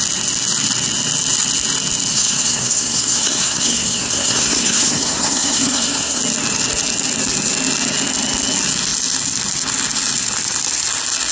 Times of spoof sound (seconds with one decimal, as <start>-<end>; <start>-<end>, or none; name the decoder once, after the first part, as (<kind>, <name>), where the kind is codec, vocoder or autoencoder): 2.1-6.2 (codec, SNAC)